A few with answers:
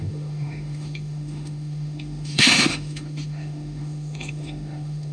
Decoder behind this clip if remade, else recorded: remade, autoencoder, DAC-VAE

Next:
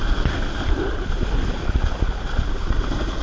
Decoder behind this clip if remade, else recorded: recorded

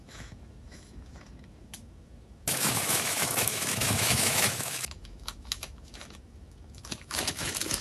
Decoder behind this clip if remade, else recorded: remade, autoencoder, DAC-VAE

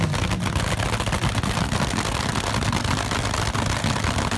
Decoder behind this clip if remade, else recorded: recorded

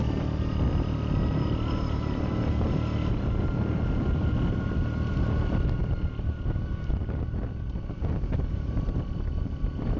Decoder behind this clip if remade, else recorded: recorded